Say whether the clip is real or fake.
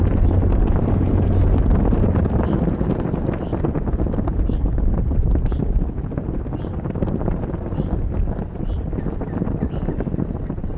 real